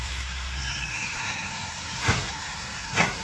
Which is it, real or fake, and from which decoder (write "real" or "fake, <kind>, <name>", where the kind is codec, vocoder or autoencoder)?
fake, codec, SNAC